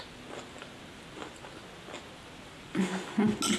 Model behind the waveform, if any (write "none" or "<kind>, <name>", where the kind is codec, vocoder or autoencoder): none